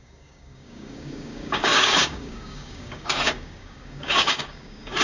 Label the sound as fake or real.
fake